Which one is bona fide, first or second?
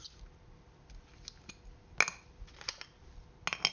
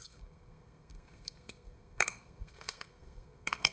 first